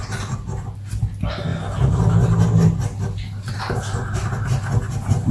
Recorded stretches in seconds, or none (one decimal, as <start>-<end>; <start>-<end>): 0.0-5.3